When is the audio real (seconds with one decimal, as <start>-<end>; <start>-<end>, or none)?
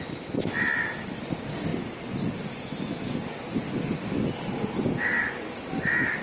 0.0-6.2